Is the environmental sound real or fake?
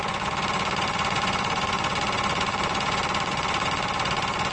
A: fake